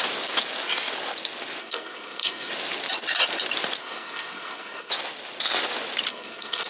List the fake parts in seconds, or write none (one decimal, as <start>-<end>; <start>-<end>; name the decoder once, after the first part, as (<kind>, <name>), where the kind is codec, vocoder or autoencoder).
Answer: 1.6-2.5 (codec, SNAC); 3.8-4.9; 6.1-6.7